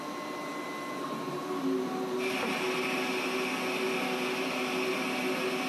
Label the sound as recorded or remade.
recorded